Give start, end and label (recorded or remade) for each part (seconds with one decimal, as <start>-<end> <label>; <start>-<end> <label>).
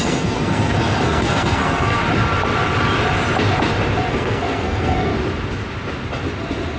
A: 0.0-2.0 remade; 2.0-4.1 recorded; 4.1-5.1 remade; 5.1-6.8 recorded